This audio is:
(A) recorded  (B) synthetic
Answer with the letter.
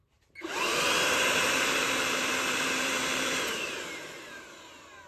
B